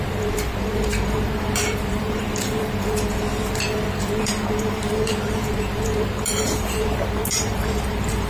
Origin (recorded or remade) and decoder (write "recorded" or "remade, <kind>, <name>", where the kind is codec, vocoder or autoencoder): remade, vocoder, BigVGAN v2